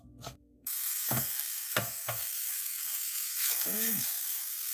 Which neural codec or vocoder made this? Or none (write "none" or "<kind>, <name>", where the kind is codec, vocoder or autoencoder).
codec, SNAC